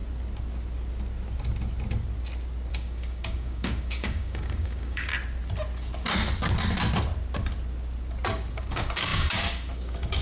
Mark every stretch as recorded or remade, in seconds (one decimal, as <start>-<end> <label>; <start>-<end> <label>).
0.0-2.7 recorded; 2.7-5.1 remade; 5.1-8.5 recorded; 8.5-10.2 remade